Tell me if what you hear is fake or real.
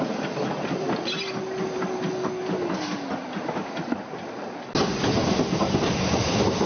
real